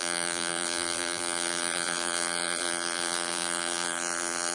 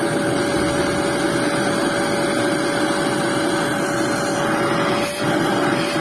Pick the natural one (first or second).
second